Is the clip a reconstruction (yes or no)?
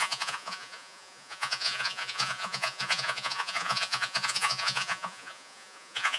yes